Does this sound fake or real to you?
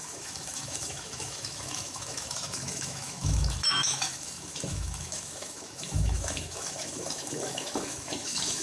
fake